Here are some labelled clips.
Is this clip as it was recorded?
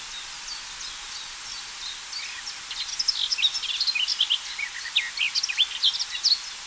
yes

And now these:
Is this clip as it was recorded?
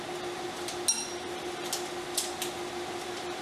yes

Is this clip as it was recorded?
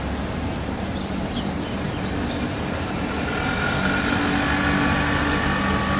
yes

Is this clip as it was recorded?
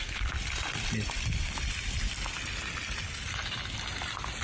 yes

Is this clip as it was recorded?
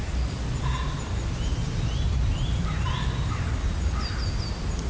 yes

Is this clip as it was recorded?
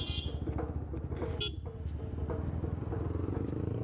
yes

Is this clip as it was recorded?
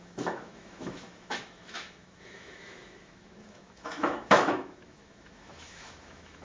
no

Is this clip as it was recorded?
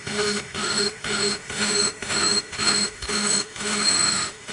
no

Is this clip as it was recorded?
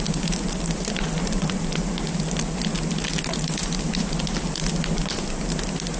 yes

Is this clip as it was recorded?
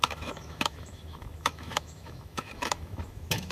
no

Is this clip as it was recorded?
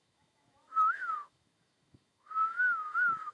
no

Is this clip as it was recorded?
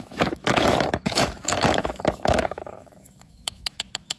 no